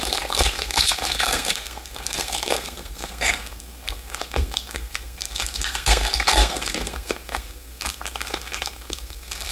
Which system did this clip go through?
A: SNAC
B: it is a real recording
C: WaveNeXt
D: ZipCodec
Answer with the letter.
A